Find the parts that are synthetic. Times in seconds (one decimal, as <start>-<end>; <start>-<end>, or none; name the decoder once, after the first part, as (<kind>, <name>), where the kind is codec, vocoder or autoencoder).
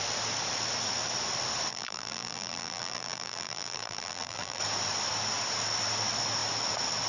1.7-4.6 (vocoder, BigVGAN v2)